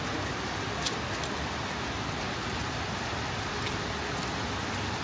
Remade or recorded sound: recorded